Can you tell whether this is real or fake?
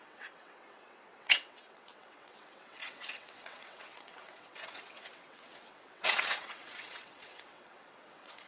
fake